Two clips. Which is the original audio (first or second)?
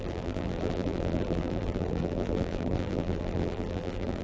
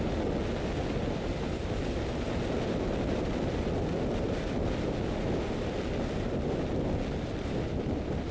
second